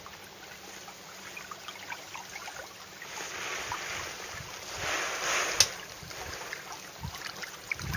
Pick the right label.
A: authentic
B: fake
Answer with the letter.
A